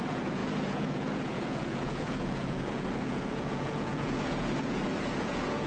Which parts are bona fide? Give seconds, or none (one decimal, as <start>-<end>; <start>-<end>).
none